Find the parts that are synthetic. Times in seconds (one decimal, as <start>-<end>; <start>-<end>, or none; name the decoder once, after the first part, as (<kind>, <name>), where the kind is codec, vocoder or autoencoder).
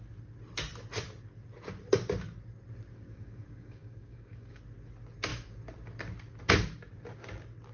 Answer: 2.9-4.6 (codec, DAC)